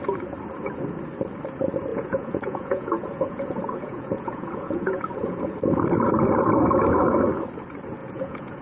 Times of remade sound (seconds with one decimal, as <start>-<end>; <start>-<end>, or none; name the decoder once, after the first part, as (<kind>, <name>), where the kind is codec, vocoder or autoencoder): 1.9-5.6 (vocoder, Vocos); 8.0-8.6